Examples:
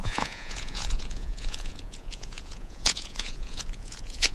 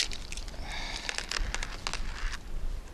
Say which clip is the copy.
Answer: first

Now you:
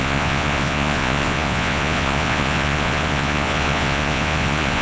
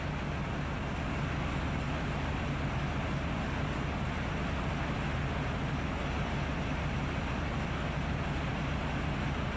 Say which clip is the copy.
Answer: first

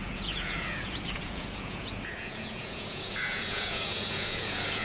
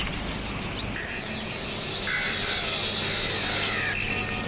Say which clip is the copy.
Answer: first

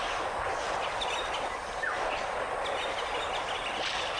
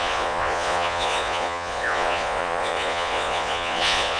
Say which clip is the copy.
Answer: second